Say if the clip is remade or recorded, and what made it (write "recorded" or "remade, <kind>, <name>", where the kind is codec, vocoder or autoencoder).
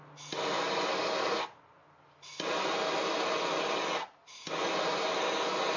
recorded